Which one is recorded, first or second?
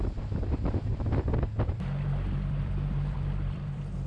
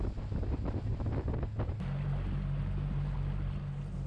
second